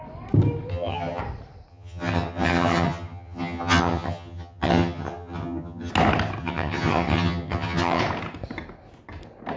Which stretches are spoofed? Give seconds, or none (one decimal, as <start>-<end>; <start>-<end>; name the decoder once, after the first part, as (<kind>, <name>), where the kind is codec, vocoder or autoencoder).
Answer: 0.7-1.2 (vocoder, HiFi-GAN); 1.7-5.9; 6.4-8.0